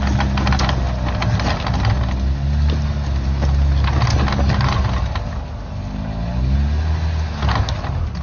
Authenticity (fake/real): real